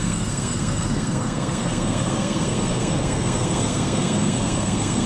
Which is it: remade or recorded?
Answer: remade